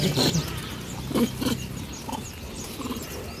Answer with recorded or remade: recorded